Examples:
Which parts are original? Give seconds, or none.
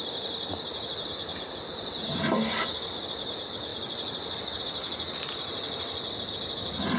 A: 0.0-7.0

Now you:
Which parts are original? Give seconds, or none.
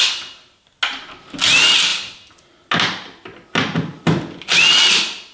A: 0.0-5.3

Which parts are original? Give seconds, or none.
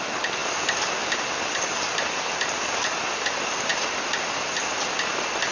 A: 0.0-0.4; 3.0-5.5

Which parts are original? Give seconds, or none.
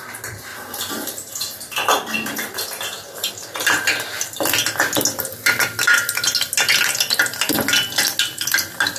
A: 0.0-0.5; 3.3-9.0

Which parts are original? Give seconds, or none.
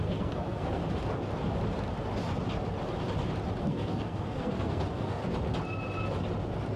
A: 0.8-3.6; 5.2-6.8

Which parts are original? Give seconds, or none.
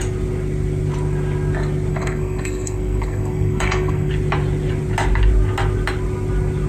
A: 0.0-1.9; 4.1-6.7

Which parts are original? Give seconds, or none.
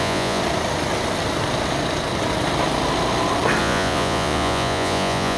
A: 0.4-3.6